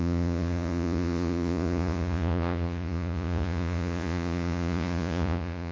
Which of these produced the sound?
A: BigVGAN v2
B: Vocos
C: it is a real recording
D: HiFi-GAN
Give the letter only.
B